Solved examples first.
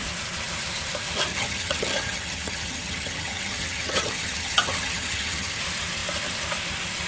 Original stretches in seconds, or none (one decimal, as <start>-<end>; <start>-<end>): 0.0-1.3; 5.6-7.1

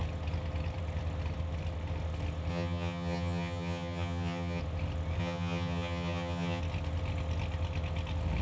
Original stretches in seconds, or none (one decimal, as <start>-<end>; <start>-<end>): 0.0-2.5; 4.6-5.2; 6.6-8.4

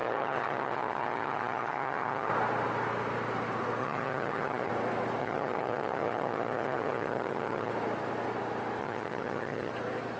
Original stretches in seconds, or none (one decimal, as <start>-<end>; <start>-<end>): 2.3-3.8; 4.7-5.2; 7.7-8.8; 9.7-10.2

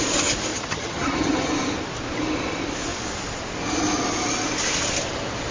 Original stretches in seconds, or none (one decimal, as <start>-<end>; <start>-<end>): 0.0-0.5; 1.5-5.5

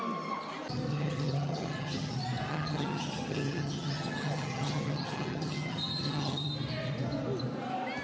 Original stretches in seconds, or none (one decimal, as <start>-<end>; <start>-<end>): 0.0-0.9; 2.1-2.5; 6.5-8.0